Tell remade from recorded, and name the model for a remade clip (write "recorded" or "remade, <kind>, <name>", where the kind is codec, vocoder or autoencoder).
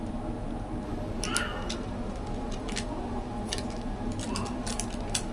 recorded